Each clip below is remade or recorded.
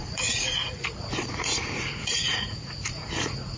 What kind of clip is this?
remade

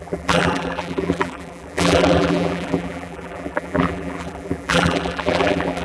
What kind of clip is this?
remade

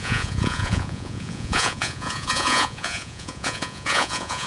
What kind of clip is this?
remade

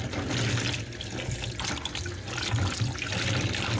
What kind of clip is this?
recorded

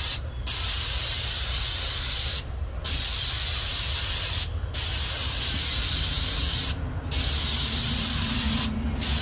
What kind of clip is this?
recorded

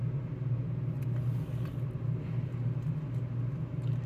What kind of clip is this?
recorded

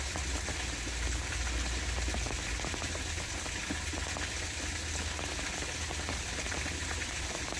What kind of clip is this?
recorded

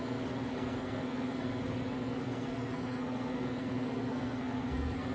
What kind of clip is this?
remade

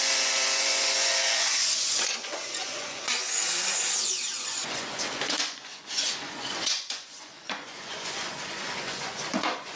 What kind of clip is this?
remade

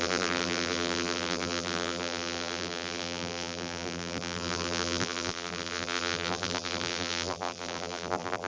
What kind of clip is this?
remade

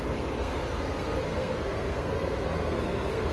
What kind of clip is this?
remade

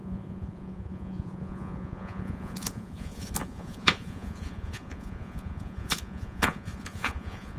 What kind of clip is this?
remade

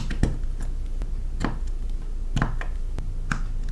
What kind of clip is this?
recorded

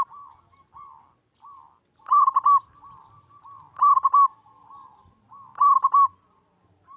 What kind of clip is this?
recorded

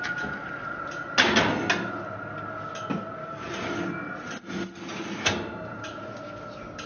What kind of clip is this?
recorded